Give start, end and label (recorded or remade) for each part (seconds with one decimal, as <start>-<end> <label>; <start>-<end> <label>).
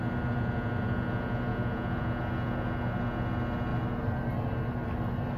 0.0-3.7 recorded; 3.7-4.3 remade; 4.3-5.4 recorded